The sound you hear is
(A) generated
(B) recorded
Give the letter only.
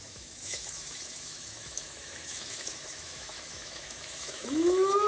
A